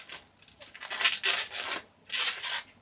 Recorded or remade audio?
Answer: recorded